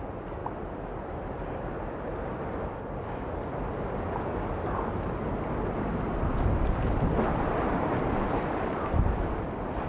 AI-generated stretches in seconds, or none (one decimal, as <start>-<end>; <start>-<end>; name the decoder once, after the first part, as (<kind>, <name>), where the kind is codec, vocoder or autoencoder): none